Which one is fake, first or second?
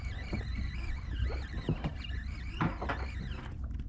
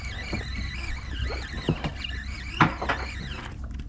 first